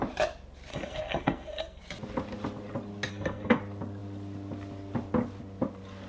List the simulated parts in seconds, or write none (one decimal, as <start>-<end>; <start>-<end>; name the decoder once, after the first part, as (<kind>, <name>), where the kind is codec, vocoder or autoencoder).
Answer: 0.7-1.8 (codec, SNAC); 3.1-3.6